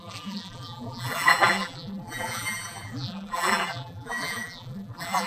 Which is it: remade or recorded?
remade